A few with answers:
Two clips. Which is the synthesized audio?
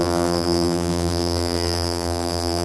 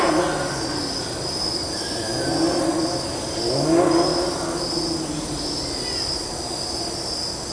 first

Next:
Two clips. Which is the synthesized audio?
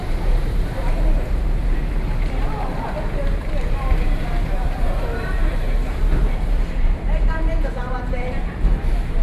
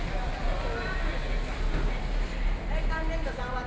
first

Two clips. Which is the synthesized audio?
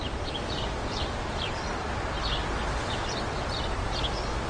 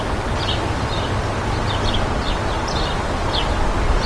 first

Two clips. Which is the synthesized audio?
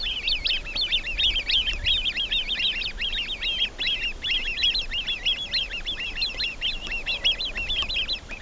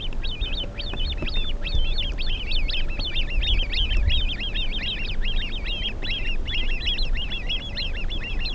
first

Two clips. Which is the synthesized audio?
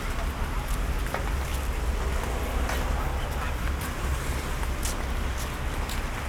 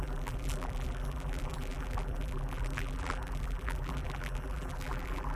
second